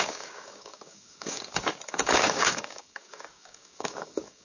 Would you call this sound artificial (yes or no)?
yes